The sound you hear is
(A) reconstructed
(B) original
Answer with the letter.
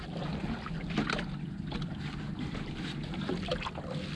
B